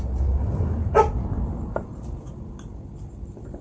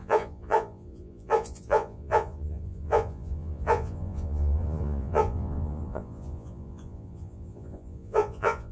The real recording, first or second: first